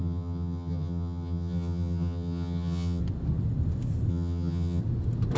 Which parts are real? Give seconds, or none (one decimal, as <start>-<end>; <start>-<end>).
3.0-4.1; 4.8-5.4